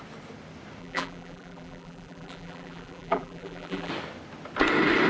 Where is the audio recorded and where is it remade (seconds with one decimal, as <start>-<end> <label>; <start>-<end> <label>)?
0.0-0.8 recorded; 0.8-3.9 remade; 3.9-5.1 recorded